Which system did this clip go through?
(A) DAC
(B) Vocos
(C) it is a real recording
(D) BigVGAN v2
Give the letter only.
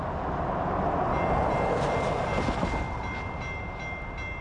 C